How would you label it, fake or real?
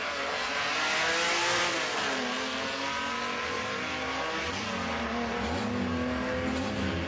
real